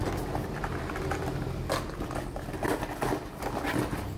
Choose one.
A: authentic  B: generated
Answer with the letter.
A